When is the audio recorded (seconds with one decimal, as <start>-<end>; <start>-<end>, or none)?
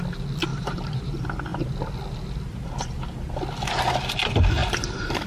0.0-0.5; 1.1-4.6